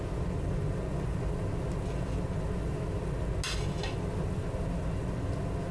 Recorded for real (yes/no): yes